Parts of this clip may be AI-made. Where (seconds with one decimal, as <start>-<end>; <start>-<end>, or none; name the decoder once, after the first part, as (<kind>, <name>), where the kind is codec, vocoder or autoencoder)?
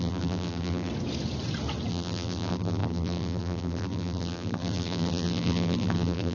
0.0-0.9 (vocoder, BigVGAN v2); 1.9-6.3